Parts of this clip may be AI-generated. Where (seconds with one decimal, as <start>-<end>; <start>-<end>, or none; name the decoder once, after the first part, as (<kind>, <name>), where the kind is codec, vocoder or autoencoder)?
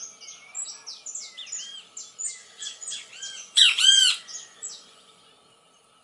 2.4-5.3 (vocoder, Vocos)